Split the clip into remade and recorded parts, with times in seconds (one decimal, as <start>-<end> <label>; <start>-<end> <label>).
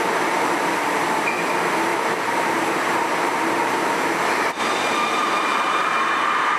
0.0-1.9 recorded; 1.9-4.6 remade; 4.6-5.2 recorded; 5.2-5.8 remade; 5.8-6.6 recorded